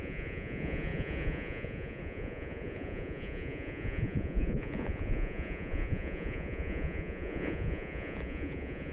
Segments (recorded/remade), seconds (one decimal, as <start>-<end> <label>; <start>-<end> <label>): 0.0-8.9 remade